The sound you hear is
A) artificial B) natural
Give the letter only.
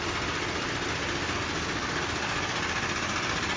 B